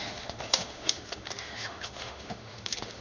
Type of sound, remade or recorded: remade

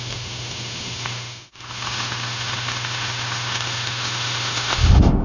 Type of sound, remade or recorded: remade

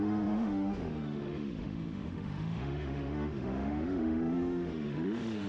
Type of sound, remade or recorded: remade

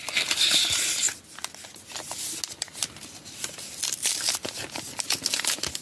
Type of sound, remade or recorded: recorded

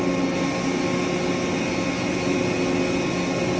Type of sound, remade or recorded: recorded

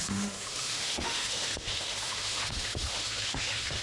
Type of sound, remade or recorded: remade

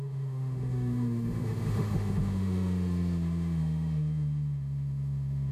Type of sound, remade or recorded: remade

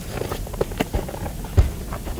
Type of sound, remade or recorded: recorded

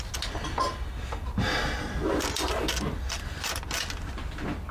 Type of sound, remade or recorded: recorded